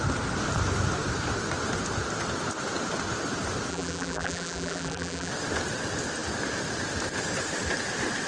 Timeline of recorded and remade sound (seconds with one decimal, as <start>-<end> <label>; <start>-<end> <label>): 0.0-3.7 recorded; 3.7-5.3 remade; 5.3-8.3 recorded